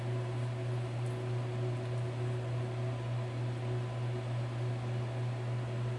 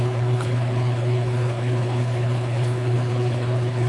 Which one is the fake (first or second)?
second